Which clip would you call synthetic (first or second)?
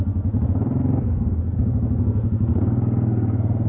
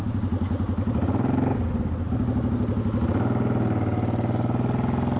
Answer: first